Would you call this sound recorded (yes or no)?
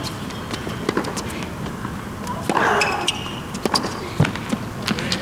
yes